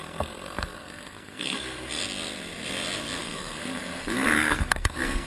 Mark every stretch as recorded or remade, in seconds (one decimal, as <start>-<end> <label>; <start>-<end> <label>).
0.0-2.0 remade; 2.0-3.2 recorded; 3.2-5.3 remade